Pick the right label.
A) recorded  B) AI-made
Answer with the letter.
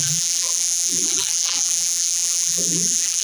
B